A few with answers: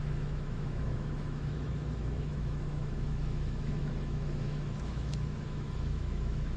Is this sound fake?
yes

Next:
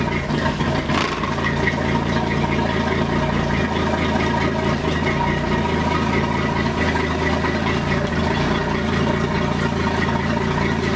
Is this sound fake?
no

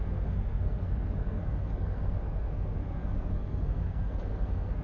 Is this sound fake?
yes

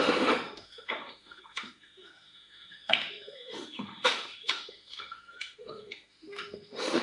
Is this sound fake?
yes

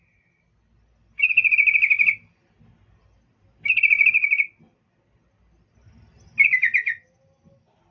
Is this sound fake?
no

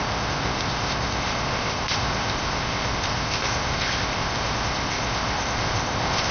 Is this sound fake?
yes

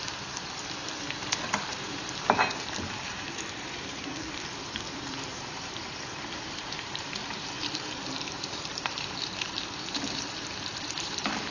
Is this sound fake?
yes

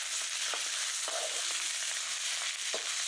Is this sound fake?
no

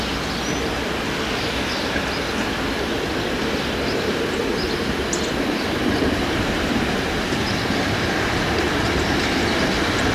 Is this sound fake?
no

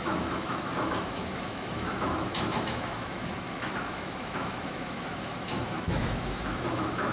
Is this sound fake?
yes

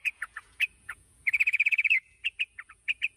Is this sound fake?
yes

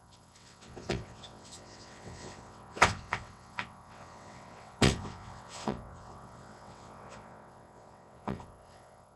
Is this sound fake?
yes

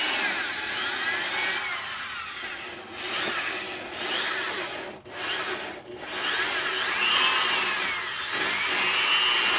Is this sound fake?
no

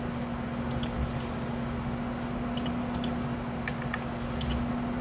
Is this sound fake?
no